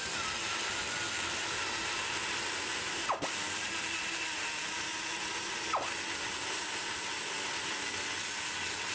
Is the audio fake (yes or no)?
no